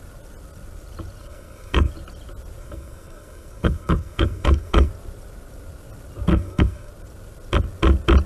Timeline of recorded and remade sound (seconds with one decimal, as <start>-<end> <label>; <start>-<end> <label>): 0.0-1.2 recorded; 1.2-1.9 remade; 1.9-2.6 recorded; 2.6-4.9 remade; 4.9-6.3 recorded; 6.3-6.9 remade; 6.9-8.3 recorded